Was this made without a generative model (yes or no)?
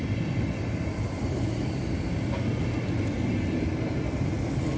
yes